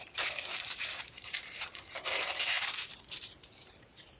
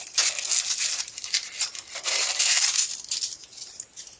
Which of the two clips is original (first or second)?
second